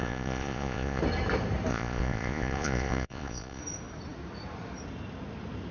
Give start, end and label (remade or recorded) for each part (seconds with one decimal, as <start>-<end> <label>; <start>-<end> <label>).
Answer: 0.0-1.0 remade; 1.0-1.7 recorded; 1.7-3.6 remade; 3.6-5.7 recorded